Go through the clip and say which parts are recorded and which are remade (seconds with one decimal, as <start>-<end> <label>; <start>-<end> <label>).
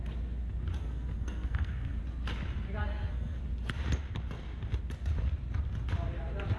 0.0-0.8 recorded; 0.8-2.0 remade; 2.0-2.8 recorded; 2.8-3.4 remade; 3.4-6.6 recorded